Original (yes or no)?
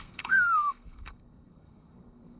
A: no